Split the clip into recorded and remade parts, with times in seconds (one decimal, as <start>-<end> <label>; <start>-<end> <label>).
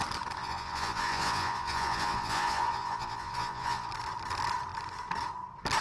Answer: 0.0-0.4 recorded; 0.4-3.9 remade; 3.9-5.8 recorded